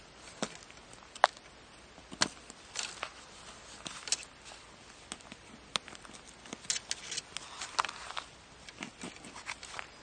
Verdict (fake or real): real